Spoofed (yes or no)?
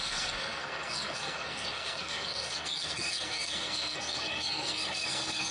yes